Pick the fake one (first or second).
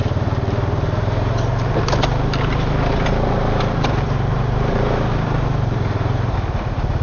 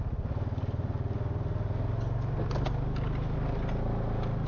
first